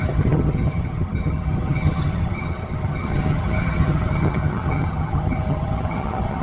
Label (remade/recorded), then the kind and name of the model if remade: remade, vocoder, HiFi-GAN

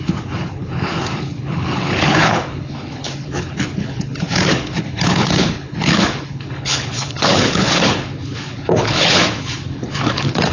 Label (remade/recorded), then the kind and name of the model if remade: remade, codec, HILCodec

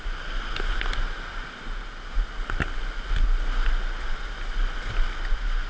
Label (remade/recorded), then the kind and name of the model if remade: recorded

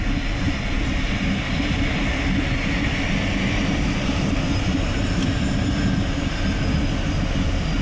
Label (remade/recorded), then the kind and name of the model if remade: recorded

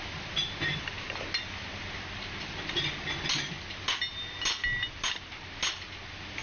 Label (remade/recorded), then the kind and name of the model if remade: recorded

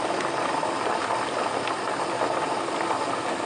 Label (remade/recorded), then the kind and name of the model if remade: recorded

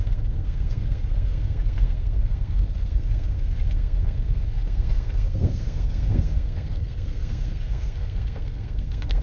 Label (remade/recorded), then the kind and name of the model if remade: remade, codec, SNAC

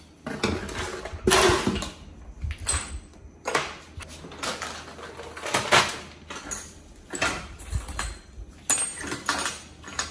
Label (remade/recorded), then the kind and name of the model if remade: recorded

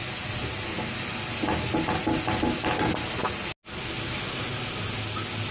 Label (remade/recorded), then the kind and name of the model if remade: recorded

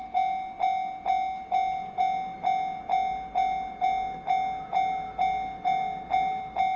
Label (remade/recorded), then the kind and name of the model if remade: recorded